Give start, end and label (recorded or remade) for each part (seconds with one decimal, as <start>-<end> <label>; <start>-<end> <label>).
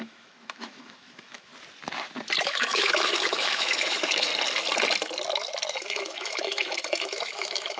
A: 0.0-1.5 remade; 1.5-2.4 recorded; 2.4-4.3 remade; 4.3-5.7 recorded; 5.7-7.8 remade